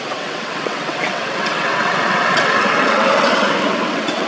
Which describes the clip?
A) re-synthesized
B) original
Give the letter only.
A